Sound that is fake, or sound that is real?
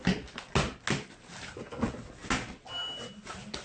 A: real